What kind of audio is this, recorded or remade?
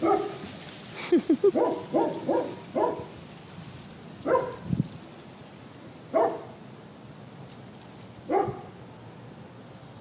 recorded